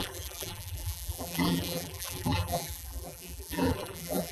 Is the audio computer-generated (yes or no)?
yes